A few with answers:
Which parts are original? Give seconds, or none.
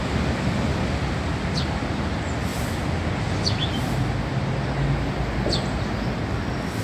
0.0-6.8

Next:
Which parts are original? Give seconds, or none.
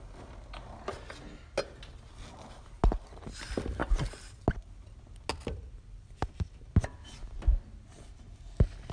0.0-5.6; 6.7-8.9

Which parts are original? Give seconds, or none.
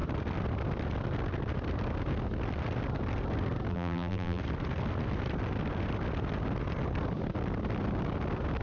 0.0-3.7; 4.4-8.6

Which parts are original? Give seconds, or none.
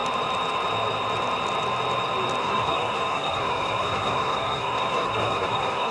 0.0-2.4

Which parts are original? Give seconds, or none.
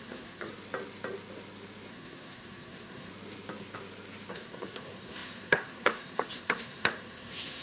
0.5-1.9; 3.1-4.3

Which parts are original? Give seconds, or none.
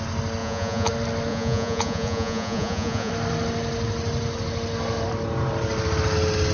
0.0-0.4; 0.9-1.3; 3.1-6.5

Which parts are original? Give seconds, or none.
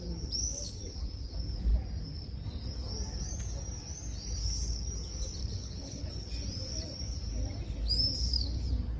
0.0-5.4; 6.1-9.0